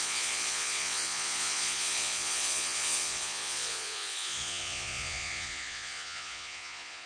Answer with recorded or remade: remade